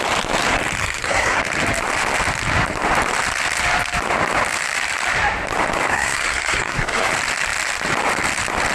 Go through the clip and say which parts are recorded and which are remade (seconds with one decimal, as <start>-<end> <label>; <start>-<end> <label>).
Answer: 0.0-0.8 recorded; 0.8-1.4 remade; 1.4-5.9 recorded; 5.9-7.1 remade; 7.1-8.7 recorded